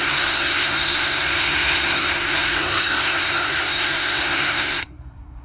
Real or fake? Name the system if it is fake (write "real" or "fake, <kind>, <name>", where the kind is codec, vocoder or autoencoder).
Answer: fake, codec, SNAC